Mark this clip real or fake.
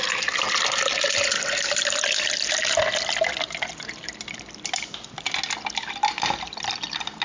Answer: real